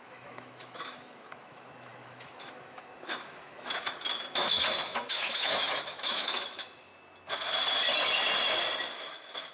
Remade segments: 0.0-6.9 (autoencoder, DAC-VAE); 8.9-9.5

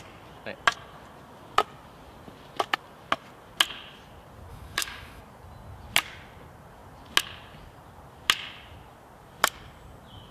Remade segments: 4.5-5.2 (autoencoder, DAC-VAE)

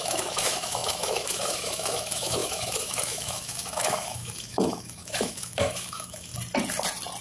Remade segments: 0.0-6.3 (autoencoder, DAC-VAE)